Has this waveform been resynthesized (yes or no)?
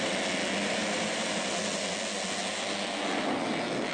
no